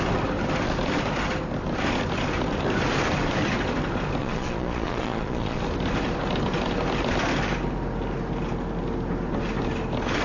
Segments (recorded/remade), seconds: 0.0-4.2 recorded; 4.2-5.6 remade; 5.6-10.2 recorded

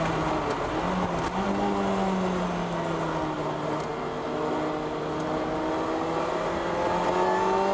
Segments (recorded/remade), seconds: 0.0-7.7 recorded

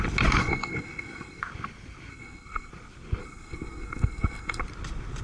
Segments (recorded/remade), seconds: 0.0-0.4 recorded; 0.4-1.4 remade; 1.4-2.1 recorded; 2.1-2.7 remade; 2.7-3.2 recorded; 3.2-4.6 remade; 4.6-5.2 recorded

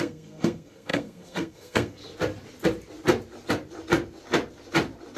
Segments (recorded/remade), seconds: 0.0-2.0 remade; 2.0-5.2 recorded